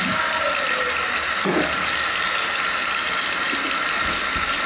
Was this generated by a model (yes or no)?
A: no